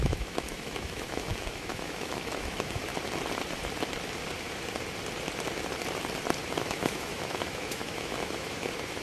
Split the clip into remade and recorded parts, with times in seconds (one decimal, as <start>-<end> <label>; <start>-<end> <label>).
0.0-2.9 remade; 2.9-6.5 recorded; 6.5-9.0 remade